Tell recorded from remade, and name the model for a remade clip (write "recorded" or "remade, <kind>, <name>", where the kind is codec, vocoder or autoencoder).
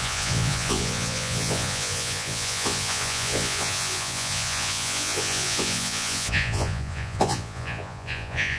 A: remade, vocoder, Vocos